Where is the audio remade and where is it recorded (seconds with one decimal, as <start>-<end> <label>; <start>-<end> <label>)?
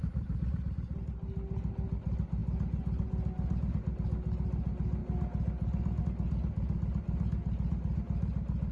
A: 0.0-8.7 recorded